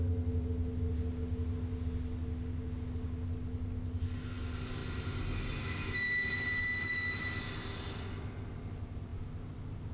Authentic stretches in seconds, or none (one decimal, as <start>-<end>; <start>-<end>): 0.0-9.9